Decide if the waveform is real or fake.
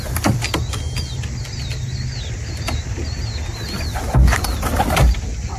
real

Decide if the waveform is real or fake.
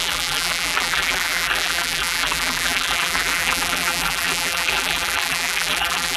fake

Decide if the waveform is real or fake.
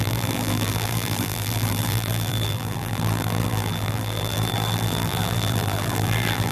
fake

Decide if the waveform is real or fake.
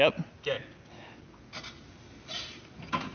real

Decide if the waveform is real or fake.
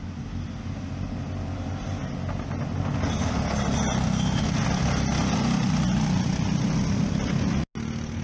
real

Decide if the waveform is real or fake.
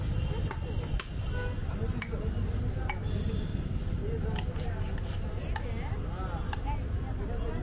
real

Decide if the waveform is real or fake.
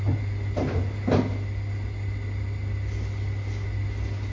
real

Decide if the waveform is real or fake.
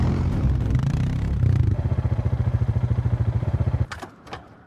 fake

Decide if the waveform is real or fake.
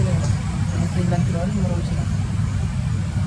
real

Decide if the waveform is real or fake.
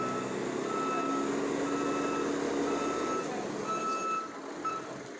real